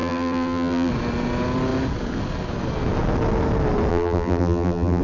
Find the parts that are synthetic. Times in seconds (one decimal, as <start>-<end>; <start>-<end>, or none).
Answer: 0.0-0.9; 3.9-5.0